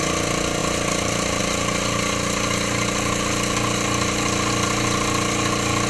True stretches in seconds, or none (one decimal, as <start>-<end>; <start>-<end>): 0.0-5.9